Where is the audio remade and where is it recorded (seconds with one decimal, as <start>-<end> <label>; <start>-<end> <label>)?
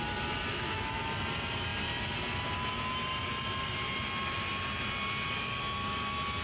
0.0-0.5 recorded; 0.5-1.0 remade; 1.0-6.4 recorded